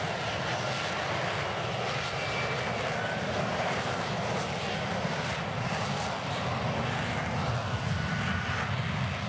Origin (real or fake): real